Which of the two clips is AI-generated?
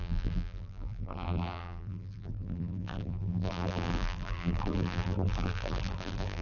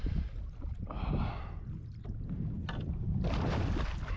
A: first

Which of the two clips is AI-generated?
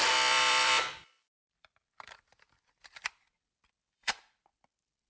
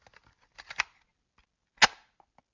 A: first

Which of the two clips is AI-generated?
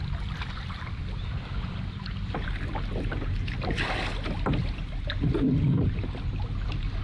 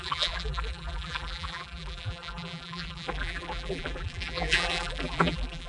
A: second